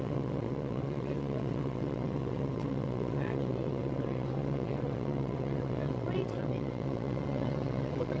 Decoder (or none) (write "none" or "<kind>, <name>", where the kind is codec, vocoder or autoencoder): vocoder, WaveNeXt